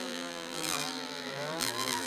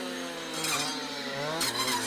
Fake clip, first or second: first